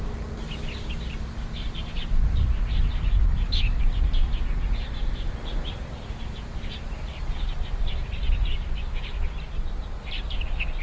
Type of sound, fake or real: real